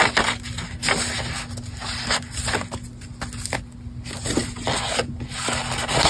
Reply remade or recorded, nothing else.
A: recorded